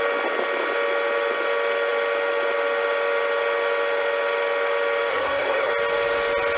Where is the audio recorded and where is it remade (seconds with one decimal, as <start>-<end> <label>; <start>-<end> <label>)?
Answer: 0.0-5.1 recorded; 5.1-5.7 remade; 5.7-6.6 recorded